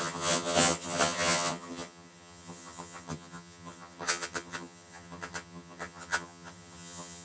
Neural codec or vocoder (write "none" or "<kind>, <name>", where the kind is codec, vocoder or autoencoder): vocoder, HiFi-GAN